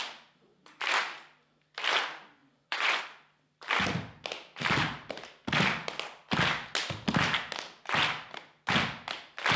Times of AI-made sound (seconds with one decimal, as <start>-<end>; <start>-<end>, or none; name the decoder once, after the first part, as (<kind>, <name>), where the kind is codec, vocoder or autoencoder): 2.4-3.0 (vocoder, Vocos)